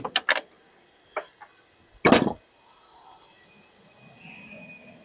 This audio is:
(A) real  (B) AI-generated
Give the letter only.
A